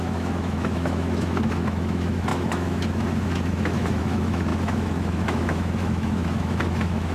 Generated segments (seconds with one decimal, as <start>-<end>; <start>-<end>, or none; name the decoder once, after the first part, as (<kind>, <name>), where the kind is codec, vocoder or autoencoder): 0.0-7.1 (autoencoder, DAC-VAE)